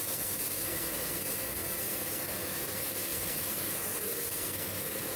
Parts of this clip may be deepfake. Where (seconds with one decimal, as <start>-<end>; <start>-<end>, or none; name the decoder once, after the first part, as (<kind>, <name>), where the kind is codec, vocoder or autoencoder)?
0.0-5.2 (codec, SNAC)